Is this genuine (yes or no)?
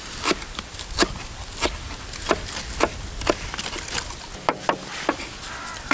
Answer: yes